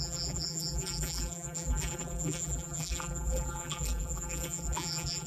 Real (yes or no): no